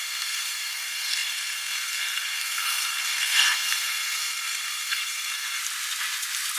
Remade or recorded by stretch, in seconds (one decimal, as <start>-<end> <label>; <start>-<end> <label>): 0.0-5.6 remade; 5.6-6.6 recorded